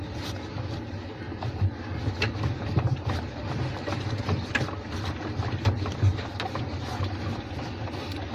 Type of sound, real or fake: real